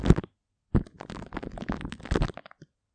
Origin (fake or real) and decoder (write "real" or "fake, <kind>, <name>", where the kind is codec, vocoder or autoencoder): real